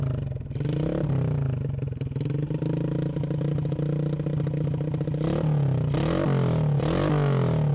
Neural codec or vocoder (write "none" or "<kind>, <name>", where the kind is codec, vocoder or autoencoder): none